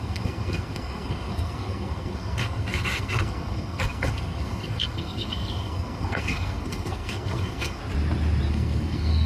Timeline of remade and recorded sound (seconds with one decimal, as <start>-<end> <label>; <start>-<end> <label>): 0.0-7.8 remade; 7.8-8.5 recorded; 8.5-9.3 remade